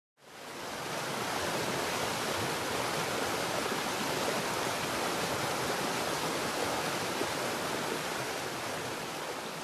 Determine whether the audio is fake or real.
real